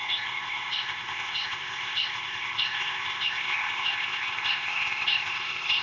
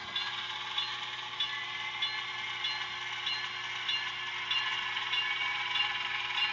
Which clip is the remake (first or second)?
first